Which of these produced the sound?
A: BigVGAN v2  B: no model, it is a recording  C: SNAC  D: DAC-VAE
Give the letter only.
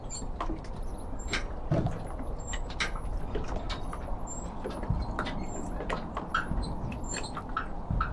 B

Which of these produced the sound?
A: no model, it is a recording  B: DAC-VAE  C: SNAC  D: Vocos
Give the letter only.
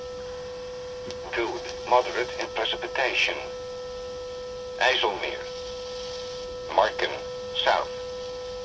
A